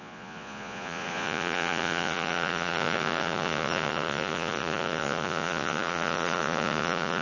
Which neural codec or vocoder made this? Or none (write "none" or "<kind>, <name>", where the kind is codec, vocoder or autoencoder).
vocoder, Vocos